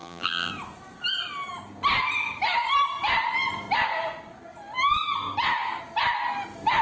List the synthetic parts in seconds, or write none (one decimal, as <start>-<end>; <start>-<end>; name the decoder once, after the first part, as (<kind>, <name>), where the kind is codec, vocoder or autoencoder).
0.0-0.5 (vocoder, BigVGAN v2)